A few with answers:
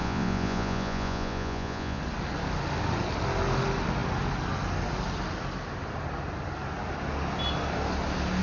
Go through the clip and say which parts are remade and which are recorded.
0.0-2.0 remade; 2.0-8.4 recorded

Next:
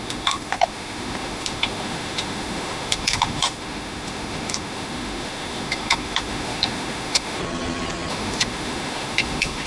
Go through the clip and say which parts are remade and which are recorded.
0.0-7.4 remade; 7.4-8.1 recorded; 8.1-9.7 remade